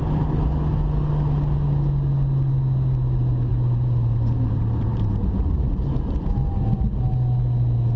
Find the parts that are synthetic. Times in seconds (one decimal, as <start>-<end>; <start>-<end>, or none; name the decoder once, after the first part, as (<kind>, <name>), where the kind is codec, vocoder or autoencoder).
3.5-6.3 (vocoder, BigVGAN v2)

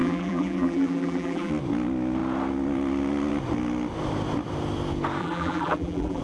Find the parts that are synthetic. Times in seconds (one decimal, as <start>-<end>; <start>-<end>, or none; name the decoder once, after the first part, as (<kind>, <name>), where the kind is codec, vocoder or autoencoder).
0.0-1.5 (vocoder, BigVGAN v2); 5.2-6.2

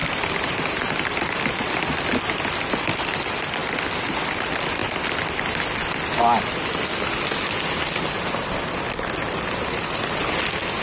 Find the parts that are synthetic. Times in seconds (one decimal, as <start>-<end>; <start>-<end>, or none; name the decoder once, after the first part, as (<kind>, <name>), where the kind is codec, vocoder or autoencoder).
0.0-1.9 (vocoder, BigVGAN v2)

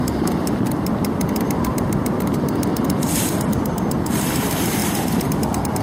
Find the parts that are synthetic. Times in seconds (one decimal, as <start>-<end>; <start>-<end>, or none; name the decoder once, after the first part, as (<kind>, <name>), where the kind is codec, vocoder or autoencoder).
none

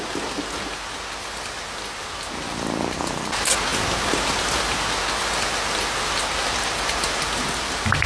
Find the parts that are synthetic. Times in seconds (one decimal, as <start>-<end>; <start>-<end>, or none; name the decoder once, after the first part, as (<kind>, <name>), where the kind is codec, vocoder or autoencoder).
none